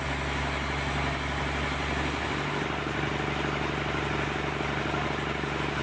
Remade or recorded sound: recorded